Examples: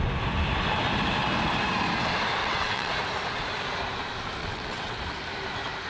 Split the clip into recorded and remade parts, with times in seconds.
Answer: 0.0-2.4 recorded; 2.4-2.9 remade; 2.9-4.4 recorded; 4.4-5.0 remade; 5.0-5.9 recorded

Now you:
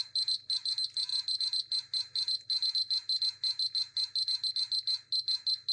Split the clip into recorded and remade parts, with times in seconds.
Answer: 0.0-5.7 recorded

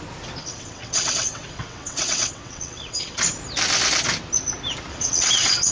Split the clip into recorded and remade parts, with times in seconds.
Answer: 0.0-0.4 recorded; 0.4-3.2 remade; 3.2-4.9 recorded; 4.9-5.7 remade

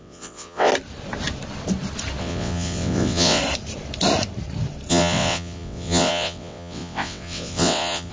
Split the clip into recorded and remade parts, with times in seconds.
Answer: 0.0-0.7 remade; 0.7-2.2 recorded; 2.2-3.4 remade; 3.4-4.9 recorded; 4.9-8.1 remade

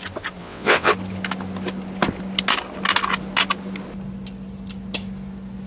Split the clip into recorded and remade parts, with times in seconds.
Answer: 0.0-0.4 recorded; 0.4-0.9 remade; 0.9-5.7 recorded

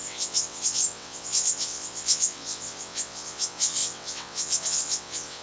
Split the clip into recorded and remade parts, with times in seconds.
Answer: 0.0-5.4 remade

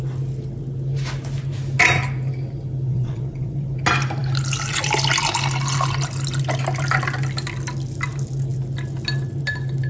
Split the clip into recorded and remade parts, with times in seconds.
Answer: 0.0-2.9 recorded; 2.9-3.7 remade; 3.7-9.9 recorded

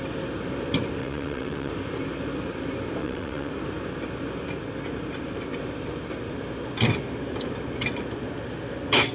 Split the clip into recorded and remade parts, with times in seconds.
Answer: 0.0-1.0 recorded; 1.0-1.7 remade; 1.7-3.0 recorded; 3.0-3.5 remade; 3.5-9.1 recorded